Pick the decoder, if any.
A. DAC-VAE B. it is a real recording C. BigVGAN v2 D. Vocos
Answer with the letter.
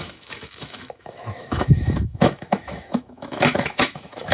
A